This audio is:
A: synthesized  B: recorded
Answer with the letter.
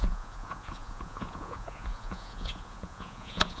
A